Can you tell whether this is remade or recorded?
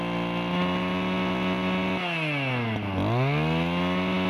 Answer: recorded